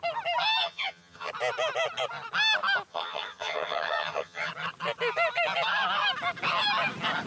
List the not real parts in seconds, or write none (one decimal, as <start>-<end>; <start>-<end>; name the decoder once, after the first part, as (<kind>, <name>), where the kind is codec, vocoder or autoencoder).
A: 0.6-1.3 (vocoder, HiFi-GAN); 2.9-4.5